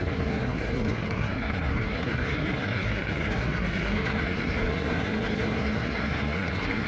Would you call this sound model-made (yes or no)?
yes